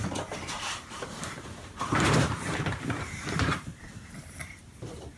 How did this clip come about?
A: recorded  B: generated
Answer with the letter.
B